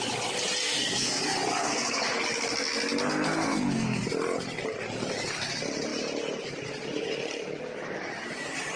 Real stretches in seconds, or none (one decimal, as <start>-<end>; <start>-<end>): 0.0-0.6; 1.2-1.6; 2.2-3.1; 4.0-8.8